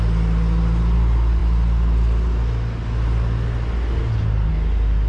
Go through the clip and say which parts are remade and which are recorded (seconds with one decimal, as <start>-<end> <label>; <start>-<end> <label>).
0.0-5.1 recorded